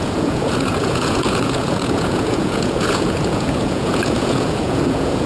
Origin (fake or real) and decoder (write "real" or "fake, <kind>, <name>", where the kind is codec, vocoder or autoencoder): fake, vocoder, Vocos